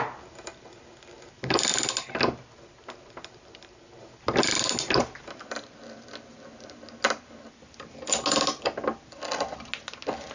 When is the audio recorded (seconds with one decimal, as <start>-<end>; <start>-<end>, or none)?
0.0-10.3